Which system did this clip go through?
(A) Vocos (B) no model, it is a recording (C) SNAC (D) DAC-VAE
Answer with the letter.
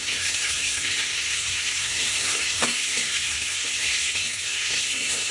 C